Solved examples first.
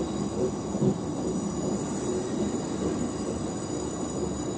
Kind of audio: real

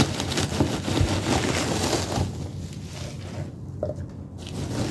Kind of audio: real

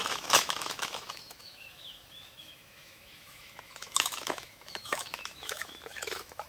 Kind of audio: fake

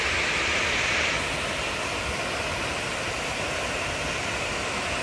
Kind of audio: real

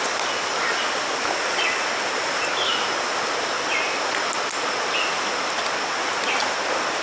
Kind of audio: real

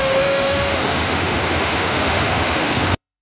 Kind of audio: fake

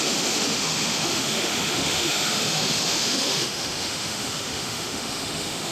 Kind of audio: fake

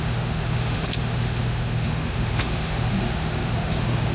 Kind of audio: fake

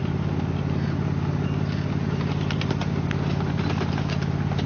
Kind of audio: real